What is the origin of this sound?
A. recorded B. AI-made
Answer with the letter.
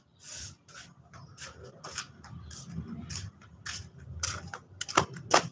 A